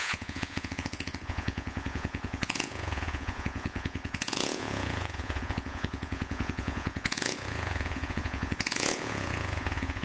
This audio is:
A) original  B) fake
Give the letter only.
B